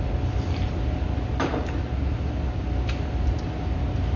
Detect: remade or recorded recorded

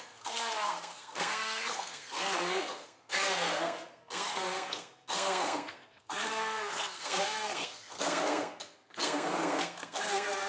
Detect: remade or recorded remade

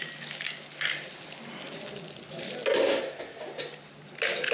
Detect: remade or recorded recorded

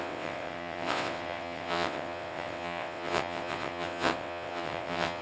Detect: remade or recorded remade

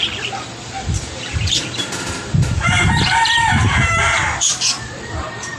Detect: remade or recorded remade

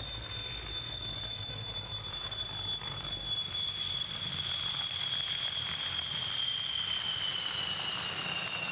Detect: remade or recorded recorded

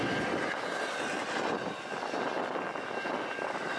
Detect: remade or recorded recorded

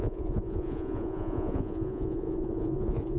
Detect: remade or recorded remade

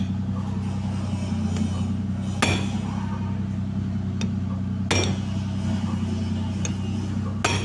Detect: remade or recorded recorded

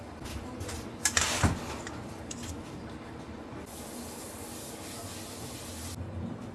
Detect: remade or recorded recorded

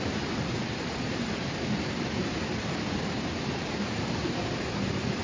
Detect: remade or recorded remade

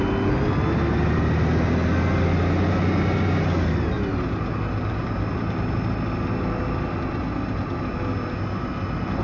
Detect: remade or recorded recorded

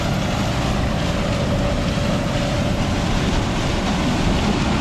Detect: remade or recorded recorded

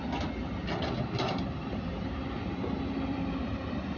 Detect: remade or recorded remade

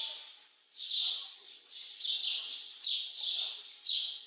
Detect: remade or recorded recorded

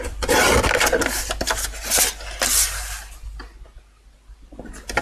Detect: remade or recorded recorded